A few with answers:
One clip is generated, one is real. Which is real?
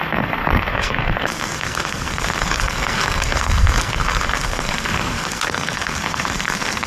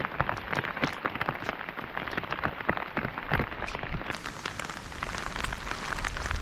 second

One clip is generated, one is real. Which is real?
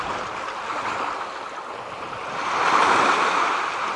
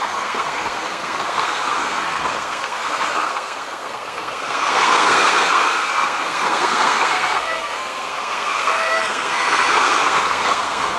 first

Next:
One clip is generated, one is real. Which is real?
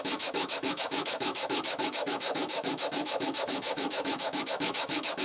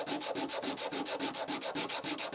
second